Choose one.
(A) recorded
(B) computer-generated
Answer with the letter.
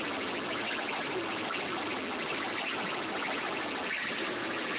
A